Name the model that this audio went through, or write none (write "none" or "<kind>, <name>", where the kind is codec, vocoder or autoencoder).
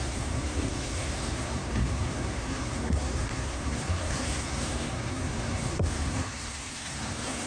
codec, SNAC